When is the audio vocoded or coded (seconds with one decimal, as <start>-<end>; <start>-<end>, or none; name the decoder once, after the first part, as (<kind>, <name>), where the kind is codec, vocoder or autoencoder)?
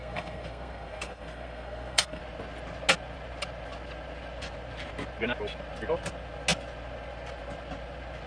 0.0-2.2 (codec, SNAC)